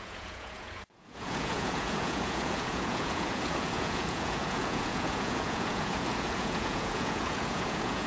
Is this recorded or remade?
remade